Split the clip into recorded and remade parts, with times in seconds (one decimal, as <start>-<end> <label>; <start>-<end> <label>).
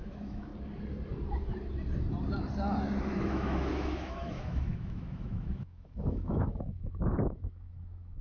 0.0-0.5 remade; 0.5-3.0 recorded; 3.0-8.2 remade